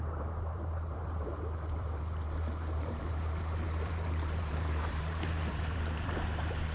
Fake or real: fake